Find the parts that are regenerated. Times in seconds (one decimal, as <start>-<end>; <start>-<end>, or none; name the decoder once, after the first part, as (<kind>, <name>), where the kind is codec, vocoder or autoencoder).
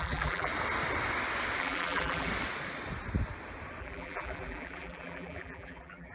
0.0-0.5 (vocoder, BigVGAN v2); 1.6-2.3; 3.8-6.1